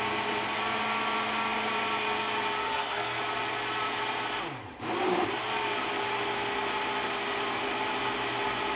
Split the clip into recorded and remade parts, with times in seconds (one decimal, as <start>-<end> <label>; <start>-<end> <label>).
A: 0.0-2.6 recorded; 2.6-3.2 remade; 3.2-8.8 recorded